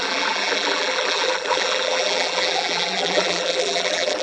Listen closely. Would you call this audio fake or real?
fake